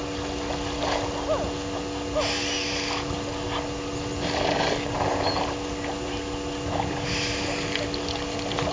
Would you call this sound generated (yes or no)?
no